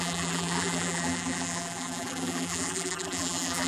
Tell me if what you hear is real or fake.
fake